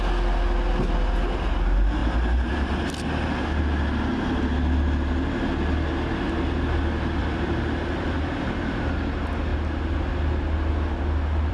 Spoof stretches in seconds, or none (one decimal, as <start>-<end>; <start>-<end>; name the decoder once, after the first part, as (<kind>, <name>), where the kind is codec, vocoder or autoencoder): 7.2-8.9 (vocoder, BigVGAN v2)